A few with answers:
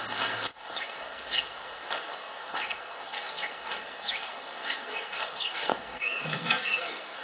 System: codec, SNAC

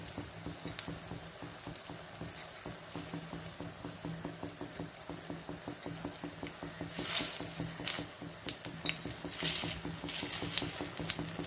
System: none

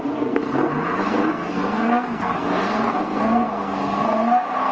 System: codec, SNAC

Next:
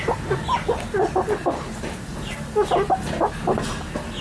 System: none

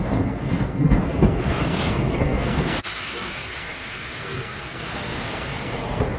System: codec, SNAC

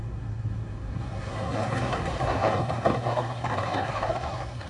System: codec, SNAC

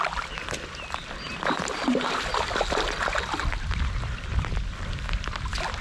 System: none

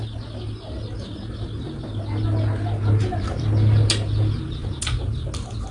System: none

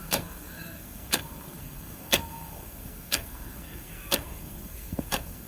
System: codec, SNAC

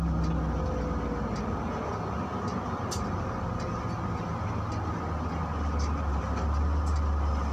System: none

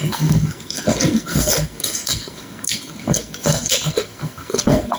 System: codec, SNAC